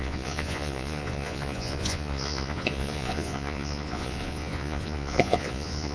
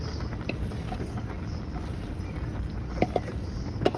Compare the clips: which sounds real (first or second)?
second